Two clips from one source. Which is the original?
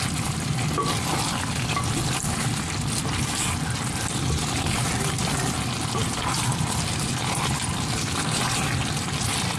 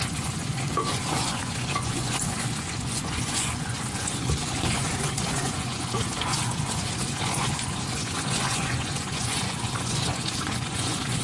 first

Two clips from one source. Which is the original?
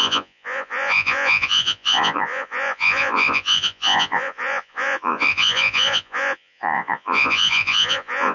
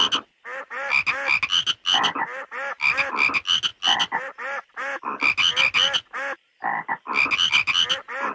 second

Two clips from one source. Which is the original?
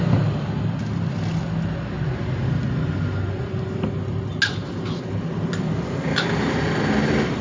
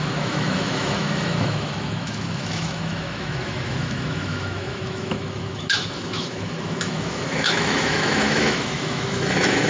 first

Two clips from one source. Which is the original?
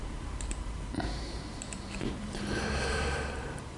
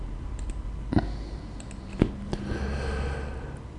second